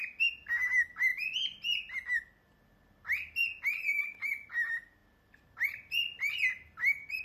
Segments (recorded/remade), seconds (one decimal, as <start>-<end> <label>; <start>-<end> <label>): 0.0-7.2 recorded